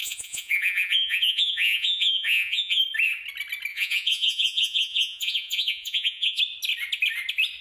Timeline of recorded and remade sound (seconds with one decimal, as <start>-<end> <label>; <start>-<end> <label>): 0.0-2.8 remade; 2.8-3.7 recorded; 3.7-6.4 remade; 6.4-7.6 recorded